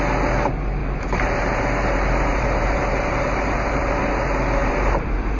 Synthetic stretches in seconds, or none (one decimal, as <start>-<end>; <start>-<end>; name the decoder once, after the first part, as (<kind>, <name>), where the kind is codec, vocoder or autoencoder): 0.8-1.6 (vocoder, BigVGAN v2); 2.3-4.0; 4.6-5.4